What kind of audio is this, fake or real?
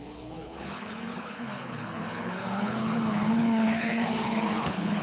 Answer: fake